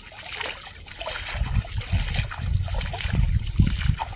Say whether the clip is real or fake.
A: real